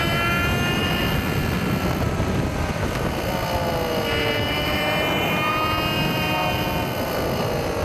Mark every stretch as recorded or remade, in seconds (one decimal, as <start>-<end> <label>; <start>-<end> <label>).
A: 0.0-7.8 recorded